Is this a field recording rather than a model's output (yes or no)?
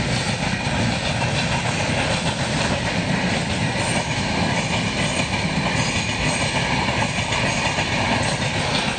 yes